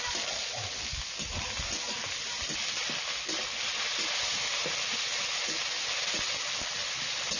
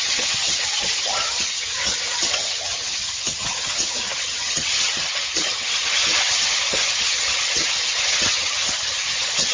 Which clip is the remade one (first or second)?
second